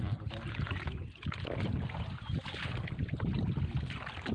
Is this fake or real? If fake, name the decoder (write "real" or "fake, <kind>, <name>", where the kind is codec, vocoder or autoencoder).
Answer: real